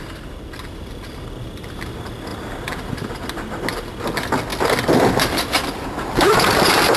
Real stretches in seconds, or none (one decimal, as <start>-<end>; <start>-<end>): 0.0-7.0